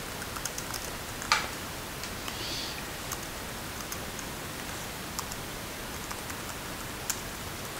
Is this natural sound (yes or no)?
yes